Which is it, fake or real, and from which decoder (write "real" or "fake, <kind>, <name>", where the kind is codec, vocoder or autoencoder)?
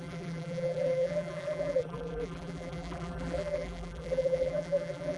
fake, vocoder, BigVGAN v2